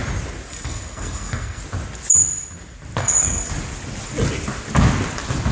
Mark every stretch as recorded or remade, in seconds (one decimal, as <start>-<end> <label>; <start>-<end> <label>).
0.0-0.5 recorded; 0.5-1.6 remade; 1.6-3.0 recorded; 3.0-3.5 remade; 3.5-5.5 recorded